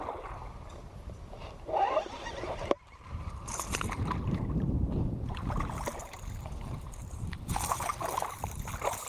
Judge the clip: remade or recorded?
remade